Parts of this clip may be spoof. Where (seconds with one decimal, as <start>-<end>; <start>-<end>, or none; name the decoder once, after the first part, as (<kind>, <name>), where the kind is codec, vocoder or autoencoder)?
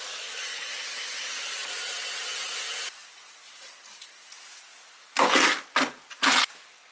none